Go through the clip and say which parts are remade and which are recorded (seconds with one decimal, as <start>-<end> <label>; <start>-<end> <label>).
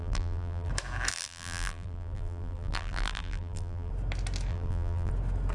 0.0-0.7 remade; 0.7-1.1 recorded; 1.1-3.9 remade; 3.9-4.5 recorded; 4.5-5.1 remade; 5.1-5.5 recorded